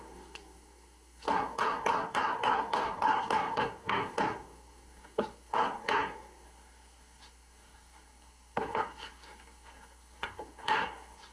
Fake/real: fake